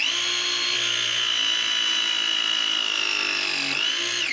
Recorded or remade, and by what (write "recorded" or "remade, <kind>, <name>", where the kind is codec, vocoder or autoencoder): recorded